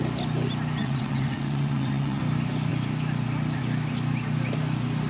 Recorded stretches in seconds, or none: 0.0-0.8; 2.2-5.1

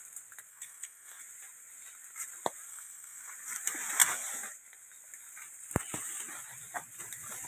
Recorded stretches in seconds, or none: 0.0-0.5; 1.2-2.7; 3.3-7.5

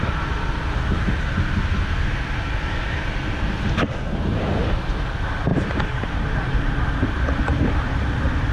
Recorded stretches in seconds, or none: 0.0-8.5